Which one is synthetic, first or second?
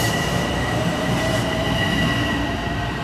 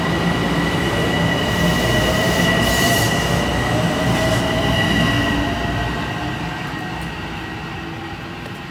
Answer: first